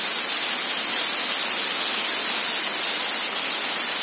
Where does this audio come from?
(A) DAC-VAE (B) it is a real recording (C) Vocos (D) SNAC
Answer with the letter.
B